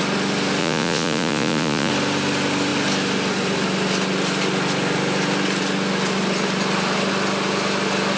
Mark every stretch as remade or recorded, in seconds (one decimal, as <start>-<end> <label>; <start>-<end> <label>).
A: 0.0-0.6 recorded; 0.6-1.9 remade; 1.9-8.2 recorded